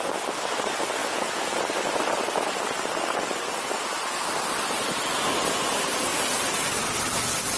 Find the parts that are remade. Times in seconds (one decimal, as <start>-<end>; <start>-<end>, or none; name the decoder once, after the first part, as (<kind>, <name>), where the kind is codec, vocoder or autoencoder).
1.0-1.5 (vocoder, Vocos)

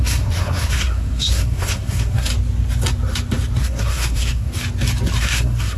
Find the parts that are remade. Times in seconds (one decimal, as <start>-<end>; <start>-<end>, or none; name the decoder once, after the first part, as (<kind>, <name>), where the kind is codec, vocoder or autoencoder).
0.0-2.3 (codec, SNAC); 3.6-4.5; 5.2-5.8

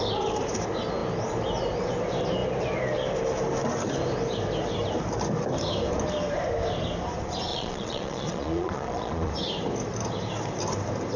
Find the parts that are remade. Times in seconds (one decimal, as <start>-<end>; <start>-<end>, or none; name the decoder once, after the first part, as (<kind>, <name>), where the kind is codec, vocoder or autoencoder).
7.5-9.3 (vocoder, Vocos)

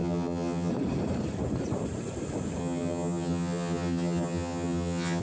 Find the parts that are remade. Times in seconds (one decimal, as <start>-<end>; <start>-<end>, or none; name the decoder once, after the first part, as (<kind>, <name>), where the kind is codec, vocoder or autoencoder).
0.0-0.7 (vocoder, HiFi-GAN); 2.6-5.2

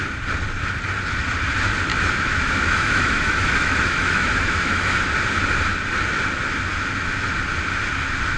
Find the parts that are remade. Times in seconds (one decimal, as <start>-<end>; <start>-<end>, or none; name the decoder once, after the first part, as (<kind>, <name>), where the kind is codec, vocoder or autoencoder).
1.9-5.1 (autoencoder, DAC-VAE)